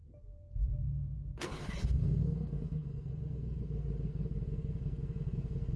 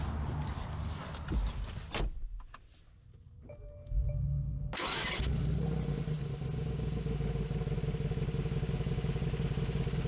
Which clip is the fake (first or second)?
first